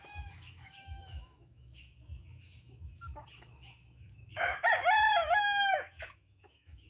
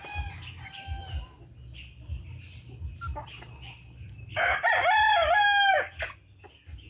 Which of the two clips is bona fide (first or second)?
second